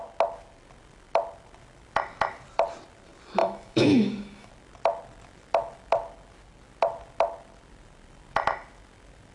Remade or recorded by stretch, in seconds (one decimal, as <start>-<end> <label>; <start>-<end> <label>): 0.0-3.4 recorded; 3.4-4.5 remade; 4.5-9.3 recorded